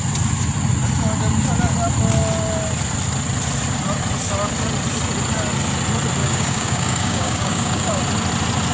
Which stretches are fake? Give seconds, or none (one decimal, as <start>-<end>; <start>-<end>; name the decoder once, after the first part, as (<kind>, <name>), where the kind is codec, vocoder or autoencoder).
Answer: 6.2-8.0 (codec, DAC)